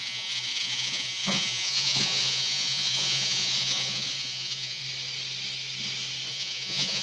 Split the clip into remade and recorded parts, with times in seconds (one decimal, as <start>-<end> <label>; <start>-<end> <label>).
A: 0.0-4.8 remade; 4.8-6.3 recorded; 6.3-7.0 remade